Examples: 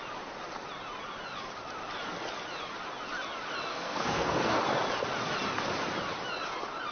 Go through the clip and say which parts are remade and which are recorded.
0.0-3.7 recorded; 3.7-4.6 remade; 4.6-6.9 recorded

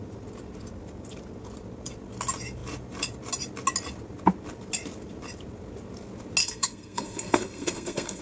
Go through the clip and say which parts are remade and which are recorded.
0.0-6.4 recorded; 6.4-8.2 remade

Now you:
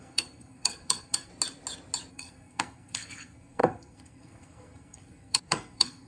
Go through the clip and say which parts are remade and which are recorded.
0.0-1.3 remade; 1.3-2.1 recorded; 2.1-6.1 remade